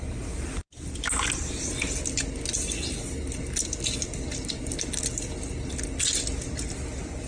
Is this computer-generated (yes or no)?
no